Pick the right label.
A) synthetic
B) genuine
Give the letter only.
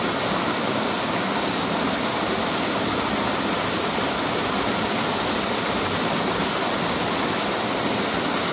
B